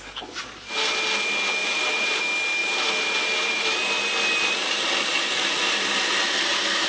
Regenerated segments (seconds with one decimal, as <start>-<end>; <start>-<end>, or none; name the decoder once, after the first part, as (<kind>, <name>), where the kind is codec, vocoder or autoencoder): 1.6-2.2 (vocoder, BigVGAN v2); 2.6-6.9